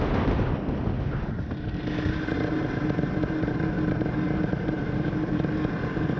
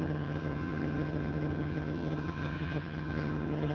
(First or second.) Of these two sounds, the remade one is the second